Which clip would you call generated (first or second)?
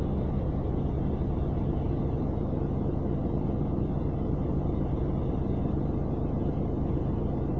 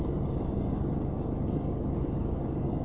second